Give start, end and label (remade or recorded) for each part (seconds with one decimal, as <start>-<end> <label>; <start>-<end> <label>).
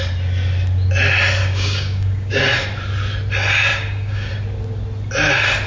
0.0-1.4 recorded; 1.4-2.4 remade; 2.4-3.7 recorded; 3.7-4.3 remade; 4.3-5.7 recorded